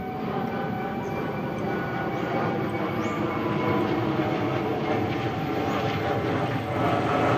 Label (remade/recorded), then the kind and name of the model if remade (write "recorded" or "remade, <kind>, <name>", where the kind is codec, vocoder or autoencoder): recorded